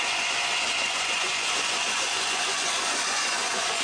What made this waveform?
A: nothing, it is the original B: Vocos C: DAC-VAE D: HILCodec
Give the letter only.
B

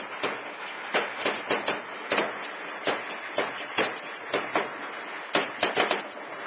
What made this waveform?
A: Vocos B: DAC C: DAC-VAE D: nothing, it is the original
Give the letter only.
D